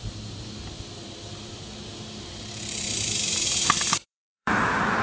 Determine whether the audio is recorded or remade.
remade